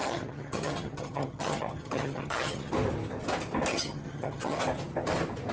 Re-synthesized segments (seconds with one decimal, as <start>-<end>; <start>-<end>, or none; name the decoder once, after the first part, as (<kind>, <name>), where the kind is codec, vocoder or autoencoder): 0.0-2.7 (vocoder, HiFi-GAN); 3.7-4.6